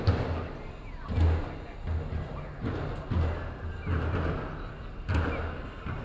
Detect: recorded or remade recorded